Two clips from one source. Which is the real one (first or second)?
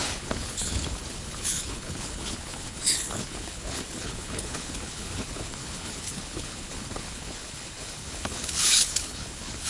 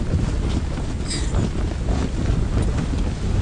second